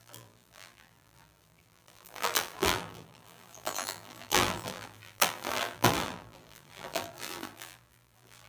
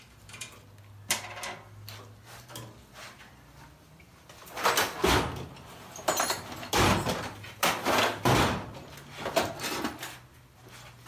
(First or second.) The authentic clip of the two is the second